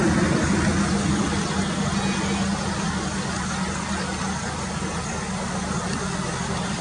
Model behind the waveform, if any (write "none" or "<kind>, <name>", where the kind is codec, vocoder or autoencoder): none